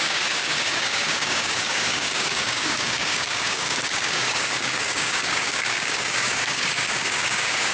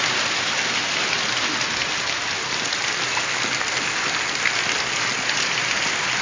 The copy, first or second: first